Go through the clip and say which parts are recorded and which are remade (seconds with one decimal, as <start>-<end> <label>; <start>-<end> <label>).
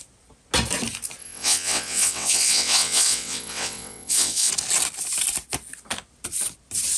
0.0-1.2 recorded; 1.2-4.5 remade; 4.5-7.0 recorded